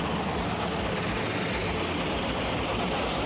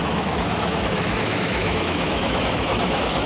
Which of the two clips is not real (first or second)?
second